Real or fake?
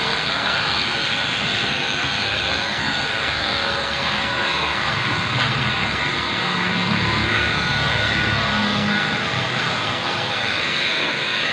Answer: fake